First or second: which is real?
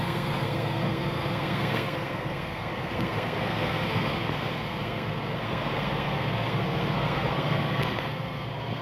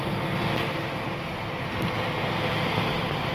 second